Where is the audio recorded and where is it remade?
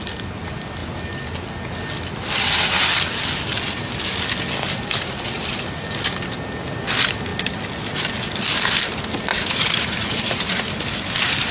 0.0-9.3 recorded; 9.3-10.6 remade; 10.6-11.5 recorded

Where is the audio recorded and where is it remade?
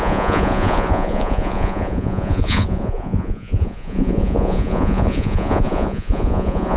0.0-6.8 remade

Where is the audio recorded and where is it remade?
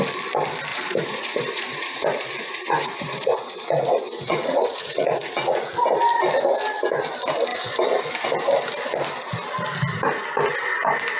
0.0-0.7 recorded; 0.7-5.7 remade; 5.7-11.2 recorded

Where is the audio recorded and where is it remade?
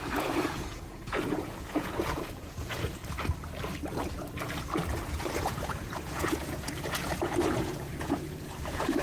0.0-3.0 remade; 3.0-5.1 recorded; 5.1-9.0 remade